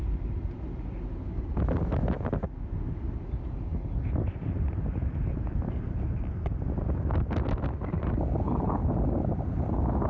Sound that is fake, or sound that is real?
real